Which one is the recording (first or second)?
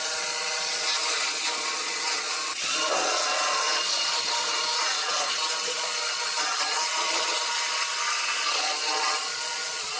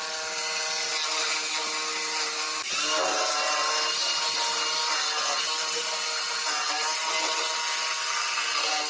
second